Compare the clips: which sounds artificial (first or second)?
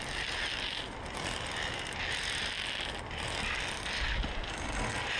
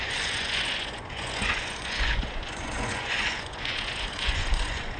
second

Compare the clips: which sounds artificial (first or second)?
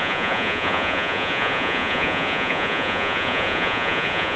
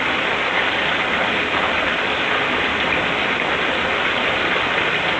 first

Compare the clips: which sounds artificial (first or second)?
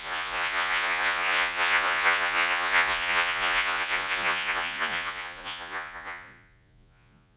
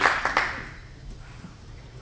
first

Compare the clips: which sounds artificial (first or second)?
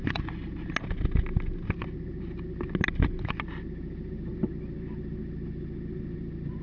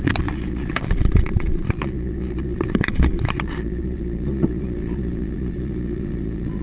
second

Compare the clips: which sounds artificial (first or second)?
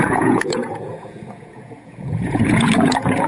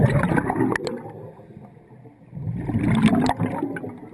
first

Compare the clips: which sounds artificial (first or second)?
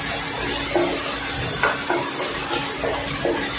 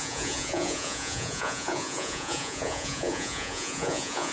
second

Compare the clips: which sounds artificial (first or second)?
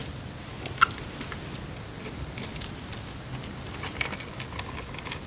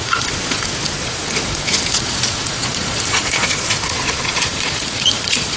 second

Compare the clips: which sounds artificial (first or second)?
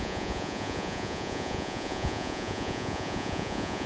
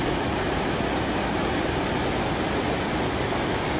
first